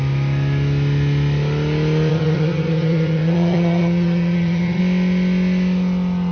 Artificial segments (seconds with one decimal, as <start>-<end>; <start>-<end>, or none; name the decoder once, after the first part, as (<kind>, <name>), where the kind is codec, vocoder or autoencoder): 2.1-4.8 (vocoder, HiFi-GAN)